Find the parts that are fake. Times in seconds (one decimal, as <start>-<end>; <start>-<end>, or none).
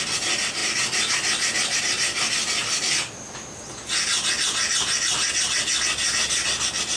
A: none